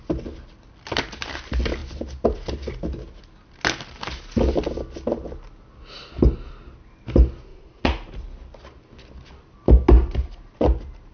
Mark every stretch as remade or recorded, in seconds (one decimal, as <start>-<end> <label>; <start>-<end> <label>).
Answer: 0.0-7.5 recorded; 7.5-8.2 remade; 8.2-11.1 recorded

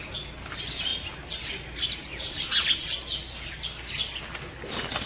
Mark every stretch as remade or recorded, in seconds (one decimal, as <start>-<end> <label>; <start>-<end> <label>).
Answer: 0.0-5.1 recorded

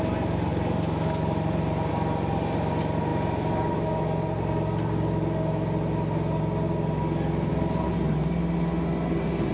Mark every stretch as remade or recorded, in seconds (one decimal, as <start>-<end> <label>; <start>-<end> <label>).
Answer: 0.0-9.5 recorded